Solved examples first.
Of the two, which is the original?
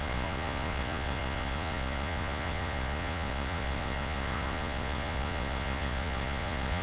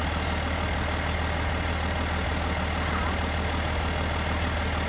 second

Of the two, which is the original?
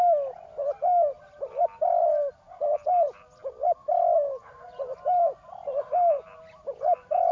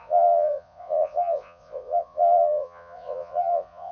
first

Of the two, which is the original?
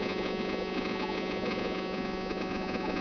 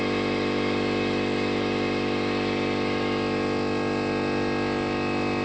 second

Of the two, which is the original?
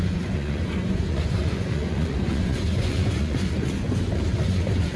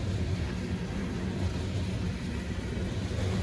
second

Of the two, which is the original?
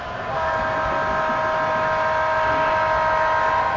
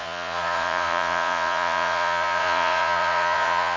first